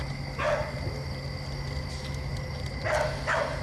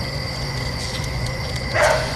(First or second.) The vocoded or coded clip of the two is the second